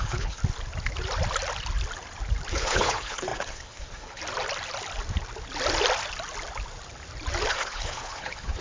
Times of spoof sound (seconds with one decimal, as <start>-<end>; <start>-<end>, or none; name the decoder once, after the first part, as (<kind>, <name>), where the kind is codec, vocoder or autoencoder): 0.0-0.4 (codec, HILCodec); 2.5-4.2; 7.5-8.6